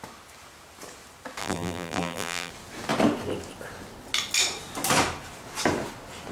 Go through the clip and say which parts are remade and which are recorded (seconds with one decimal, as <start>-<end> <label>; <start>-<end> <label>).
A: 0.0-1.4 recorded; 1.4-2.5 remade; 2.5-6.3 recorded